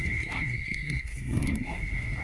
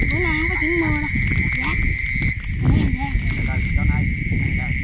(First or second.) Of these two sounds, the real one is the second